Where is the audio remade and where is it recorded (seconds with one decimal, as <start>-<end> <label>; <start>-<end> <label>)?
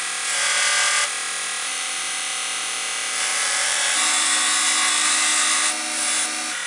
0.0-1.7 recorded; 1.7-2.3 remade; 2.3-3.3 recorded; 3.3-4.0 remade; 4.0-6.7 recorded